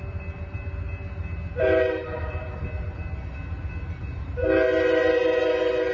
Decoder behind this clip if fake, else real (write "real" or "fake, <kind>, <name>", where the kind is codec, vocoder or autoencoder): real